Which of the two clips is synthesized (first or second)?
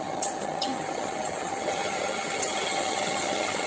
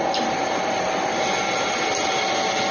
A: first